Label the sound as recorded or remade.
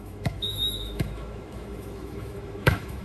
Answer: remade